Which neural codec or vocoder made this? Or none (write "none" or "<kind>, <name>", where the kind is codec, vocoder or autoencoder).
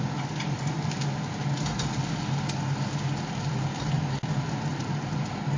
none